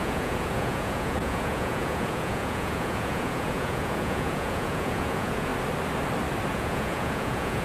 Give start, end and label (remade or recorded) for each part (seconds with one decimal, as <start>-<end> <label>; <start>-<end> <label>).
0.0-5.5 remade; 5.5-6.5 recorded; 6.5-7.6 remade

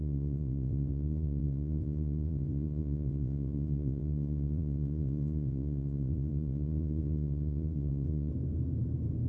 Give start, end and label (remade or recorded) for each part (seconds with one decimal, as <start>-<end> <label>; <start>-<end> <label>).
0.0-8.3 remade; 8.3-9.3 recorded

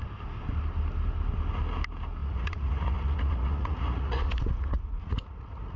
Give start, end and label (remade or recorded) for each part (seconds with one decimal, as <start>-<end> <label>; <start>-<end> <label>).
0.0-2.2 recorded; 2.2-5.8 remade

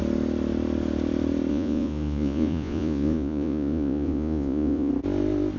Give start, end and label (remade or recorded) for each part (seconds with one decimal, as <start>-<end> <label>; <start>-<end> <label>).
0.0-1.5 recorded; 1.5-4.9 remade; 4.9-5.6 recorded

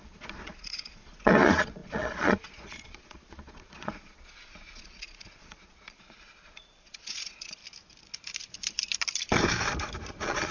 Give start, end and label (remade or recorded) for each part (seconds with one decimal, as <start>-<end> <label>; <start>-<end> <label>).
0.0-7.6 remade; 7.6-10.1 recorded; 10.1-10.5 remade

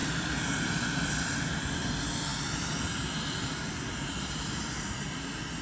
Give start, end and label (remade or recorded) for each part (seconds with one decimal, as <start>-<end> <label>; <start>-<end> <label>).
0.0-5.6 recorded

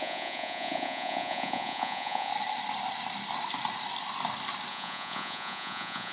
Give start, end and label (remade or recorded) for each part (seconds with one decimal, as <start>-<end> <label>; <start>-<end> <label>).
0.0-2.3 remade; 2.3-4.7 recorded; 4.7-6.1 remade